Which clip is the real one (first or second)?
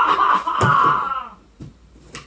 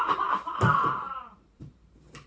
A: first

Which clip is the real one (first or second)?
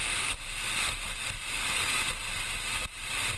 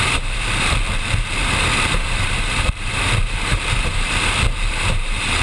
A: first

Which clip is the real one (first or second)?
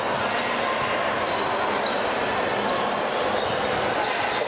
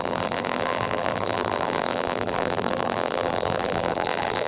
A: first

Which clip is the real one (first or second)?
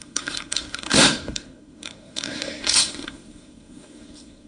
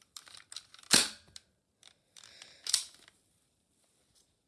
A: second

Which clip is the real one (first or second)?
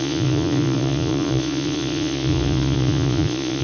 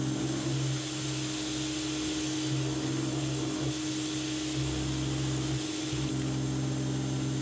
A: second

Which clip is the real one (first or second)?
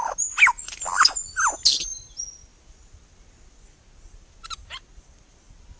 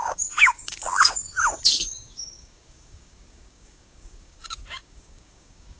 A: first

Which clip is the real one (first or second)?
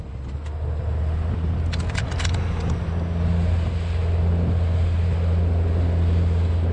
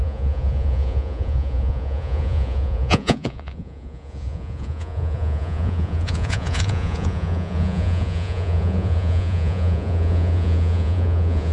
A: first